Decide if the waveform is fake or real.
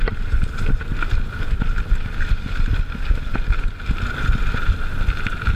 real